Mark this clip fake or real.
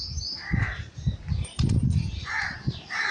fake